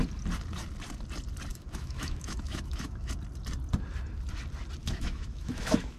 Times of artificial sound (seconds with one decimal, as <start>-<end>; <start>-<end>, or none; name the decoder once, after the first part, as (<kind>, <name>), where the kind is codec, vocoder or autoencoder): 1.5-3.1 (autoencoder, DAC-VAE); 4.8-6.0